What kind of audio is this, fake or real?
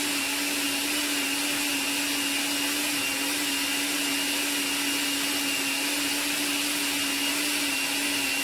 real